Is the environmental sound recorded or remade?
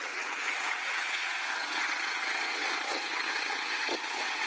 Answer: remade